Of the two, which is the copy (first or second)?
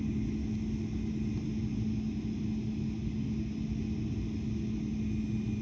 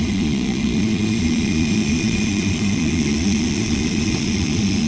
second